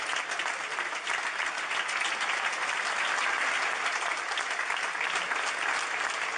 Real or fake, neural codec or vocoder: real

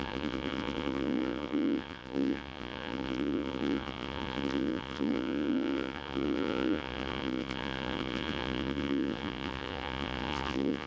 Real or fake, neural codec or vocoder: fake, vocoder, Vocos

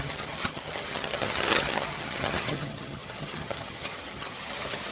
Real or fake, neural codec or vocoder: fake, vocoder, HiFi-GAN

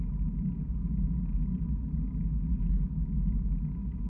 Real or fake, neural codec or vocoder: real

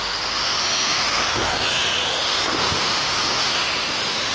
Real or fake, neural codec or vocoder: fake, autoencoder, DAC-VAE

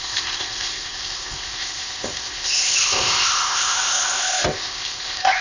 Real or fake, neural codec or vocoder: fake, codec, ZipCodec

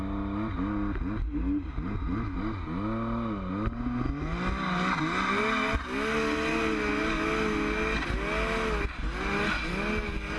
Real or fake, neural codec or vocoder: real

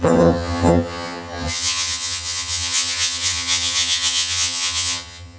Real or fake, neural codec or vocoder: fake, vocoder, HiFi-GAN